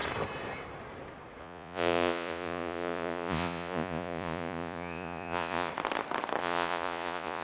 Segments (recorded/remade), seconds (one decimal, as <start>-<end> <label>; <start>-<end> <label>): 0.0-1.4 recorded; 1.4-5.7 remade; 5.7-6.4 recorded; 6.4-7.4 remade